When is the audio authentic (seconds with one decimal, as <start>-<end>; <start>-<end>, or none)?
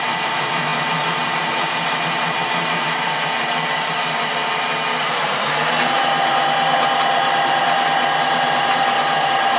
4.3-5.0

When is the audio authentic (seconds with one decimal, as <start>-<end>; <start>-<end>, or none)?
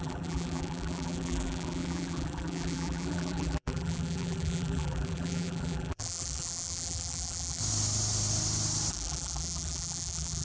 7.6-8.9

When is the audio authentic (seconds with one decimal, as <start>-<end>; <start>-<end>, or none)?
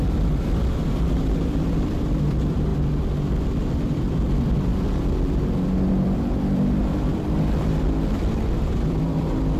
2.7-4.1; 4.7-5.9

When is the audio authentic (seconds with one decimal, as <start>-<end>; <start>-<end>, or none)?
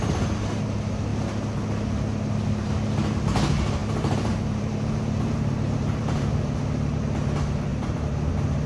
0.0-3.8; 6.3-7.7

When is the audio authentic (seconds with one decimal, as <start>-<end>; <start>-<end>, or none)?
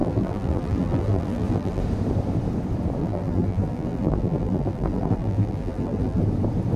1.8-3.0; 6.2-6.8